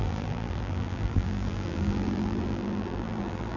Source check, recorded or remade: remade